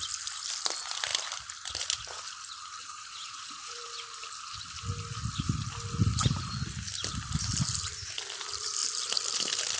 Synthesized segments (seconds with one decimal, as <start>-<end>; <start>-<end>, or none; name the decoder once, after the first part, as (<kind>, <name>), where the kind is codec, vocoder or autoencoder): 2.8-3.8 (vocoder, Vocos)